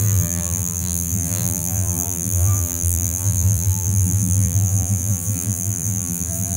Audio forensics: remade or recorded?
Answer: remade